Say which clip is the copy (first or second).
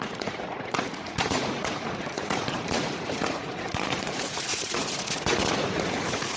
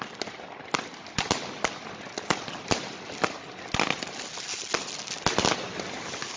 first